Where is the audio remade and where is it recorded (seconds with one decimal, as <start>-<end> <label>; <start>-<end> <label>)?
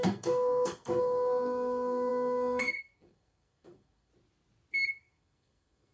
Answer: 0.0-4.1 remade; 4.1-4.9 recorded; 4.9-5.9 remade